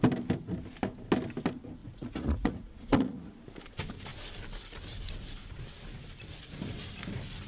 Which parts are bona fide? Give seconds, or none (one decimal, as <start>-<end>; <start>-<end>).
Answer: 0.0-1.8; 3.3-7.5